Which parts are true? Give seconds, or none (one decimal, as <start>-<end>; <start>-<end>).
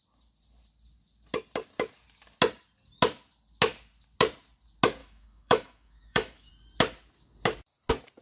0.0-5.0; 6.5-8.2